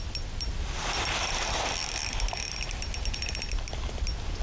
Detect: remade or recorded recorded